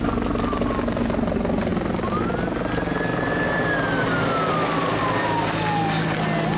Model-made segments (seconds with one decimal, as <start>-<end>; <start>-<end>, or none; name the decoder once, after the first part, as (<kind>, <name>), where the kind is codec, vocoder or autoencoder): none